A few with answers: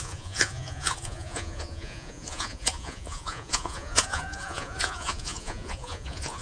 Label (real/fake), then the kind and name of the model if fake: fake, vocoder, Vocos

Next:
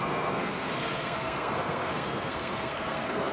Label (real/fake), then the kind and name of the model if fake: fake, codec, SNAC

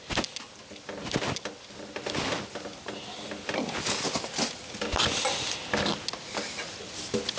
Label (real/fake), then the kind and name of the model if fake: real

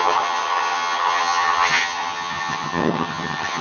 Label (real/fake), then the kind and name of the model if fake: fake, vocoder, HiFi-GAN